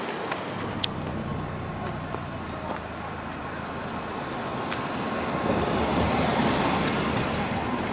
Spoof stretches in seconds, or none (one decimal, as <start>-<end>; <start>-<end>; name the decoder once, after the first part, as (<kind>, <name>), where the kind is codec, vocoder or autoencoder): 5.9-6.6 (vocoder, BigVGAN v2)